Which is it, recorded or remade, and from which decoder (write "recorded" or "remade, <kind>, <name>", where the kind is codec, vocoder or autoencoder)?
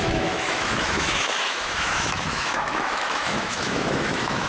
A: remade, autoencoder, DAC-VAE